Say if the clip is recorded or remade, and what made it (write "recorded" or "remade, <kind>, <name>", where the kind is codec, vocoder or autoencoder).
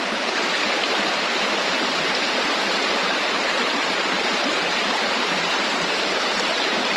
remade, vocoder, BigVGAN v2